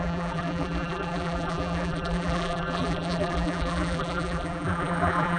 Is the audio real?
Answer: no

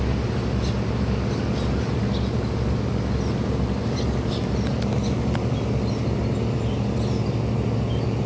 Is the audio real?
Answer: yes